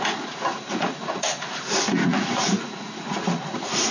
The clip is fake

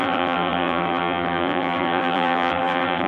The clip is fake